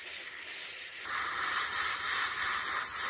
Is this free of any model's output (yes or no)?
yes